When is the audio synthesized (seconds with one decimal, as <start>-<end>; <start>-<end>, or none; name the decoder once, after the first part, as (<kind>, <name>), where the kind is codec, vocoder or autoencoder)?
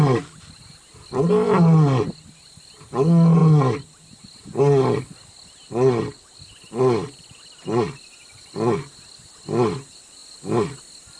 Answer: none